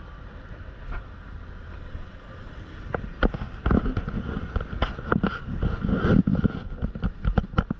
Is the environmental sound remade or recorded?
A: recorded